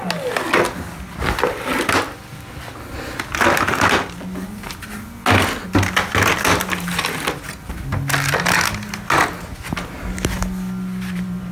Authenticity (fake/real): real